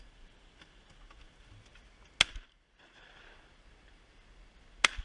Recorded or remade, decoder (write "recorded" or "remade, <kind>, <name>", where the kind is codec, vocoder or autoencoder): recorded